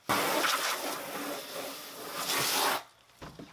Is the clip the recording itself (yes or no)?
no